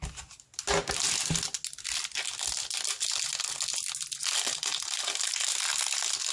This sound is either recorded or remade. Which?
recorded